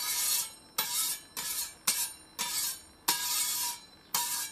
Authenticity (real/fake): real